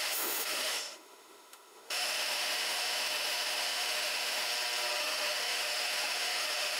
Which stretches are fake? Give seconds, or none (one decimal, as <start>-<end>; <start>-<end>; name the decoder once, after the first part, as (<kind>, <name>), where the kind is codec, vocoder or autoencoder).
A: 0.0-4.5 (autoencoder, DAC-VAE); 5.0-6.8